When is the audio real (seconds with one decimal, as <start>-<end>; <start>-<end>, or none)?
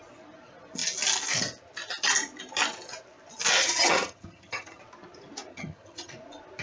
0.0-3.6; 4.8-5.5; 6.1-6.6